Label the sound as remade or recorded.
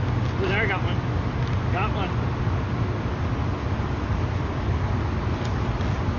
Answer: recorded